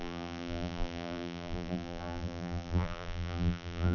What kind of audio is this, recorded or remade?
remade